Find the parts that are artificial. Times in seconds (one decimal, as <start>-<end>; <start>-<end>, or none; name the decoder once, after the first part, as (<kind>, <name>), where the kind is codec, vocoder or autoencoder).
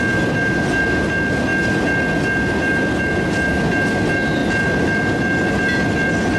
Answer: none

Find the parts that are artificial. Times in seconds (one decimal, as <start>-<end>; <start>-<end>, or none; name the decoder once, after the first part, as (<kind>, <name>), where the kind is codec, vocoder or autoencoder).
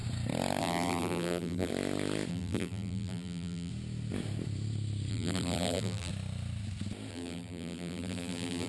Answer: 0.6-1.7 (vocoder, BigVGAN v2); 2.3-3.7; 5.1-6.1; 7.1-8.7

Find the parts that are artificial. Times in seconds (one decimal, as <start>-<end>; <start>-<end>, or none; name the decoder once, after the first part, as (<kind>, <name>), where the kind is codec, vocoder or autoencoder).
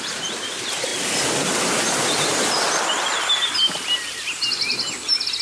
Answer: 0.0-0.9 (vocoder, BigVGAN v2); 4.1-5.4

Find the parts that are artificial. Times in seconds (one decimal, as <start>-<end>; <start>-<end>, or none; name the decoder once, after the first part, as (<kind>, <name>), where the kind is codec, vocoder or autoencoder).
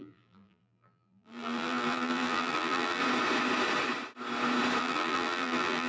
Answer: 0.0-3.0 (vocoder, BigVGAN v2); 4.8-5.9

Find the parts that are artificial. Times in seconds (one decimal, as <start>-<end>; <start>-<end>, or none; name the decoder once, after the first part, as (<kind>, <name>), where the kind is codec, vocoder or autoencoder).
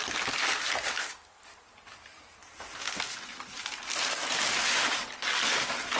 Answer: none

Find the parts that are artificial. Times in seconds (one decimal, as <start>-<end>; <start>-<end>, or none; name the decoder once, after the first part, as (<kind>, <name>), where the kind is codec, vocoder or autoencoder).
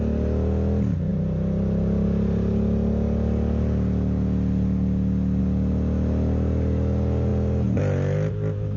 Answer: none